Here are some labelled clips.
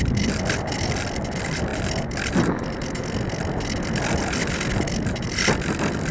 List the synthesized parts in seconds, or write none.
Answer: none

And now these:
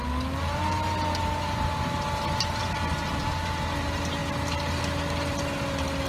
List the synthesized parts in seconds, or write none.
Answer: none

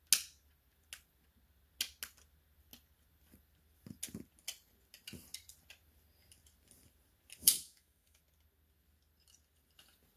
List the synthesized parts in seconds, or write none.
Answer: 7.4-8.2 (autoencoder, DAC-VAE)